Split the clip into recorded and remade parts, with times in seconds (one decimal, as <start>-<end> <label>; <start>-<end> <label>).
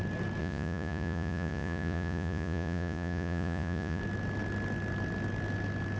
0.0-0.4 recorded; 0.4-4.0 remade; 4.0-6.0 recorded